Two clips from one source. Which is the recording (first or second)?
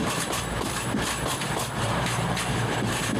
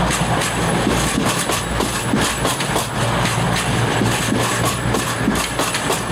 second